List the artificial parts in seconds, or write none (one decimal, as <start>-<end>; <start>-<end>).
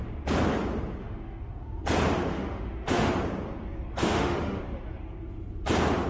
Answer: 1.0-1.8; 2.3-3.1; 4.0-4.6